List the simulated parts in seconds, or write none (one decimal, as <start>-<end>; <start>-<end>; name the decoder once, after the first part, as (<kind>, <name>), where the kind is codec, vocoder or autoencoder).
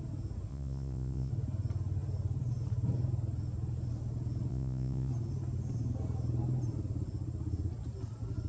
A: 0.5-1.3 (vocoder, Vocos); 4.5-5.1